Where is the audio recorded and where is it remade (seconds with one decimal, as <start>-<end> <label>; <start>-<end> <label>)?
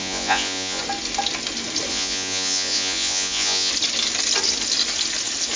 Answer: 0.0-0.8 remade; 0.8-1.9 recorded; 1.9-3.7 remade; 3.7-5.6 recorded